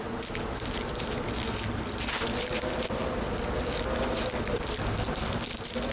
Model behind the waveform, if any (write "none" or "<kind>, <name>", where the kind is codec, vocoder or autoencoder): none